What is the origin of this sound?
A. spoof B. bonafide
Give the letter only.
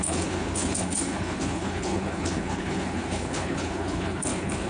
A